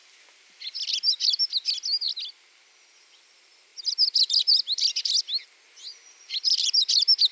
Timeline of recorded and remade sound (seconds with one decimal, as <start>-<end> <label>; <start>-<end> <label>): 0.0-5.9 recorded; 5.9-6.8 remade; 6.8-7.3 recorded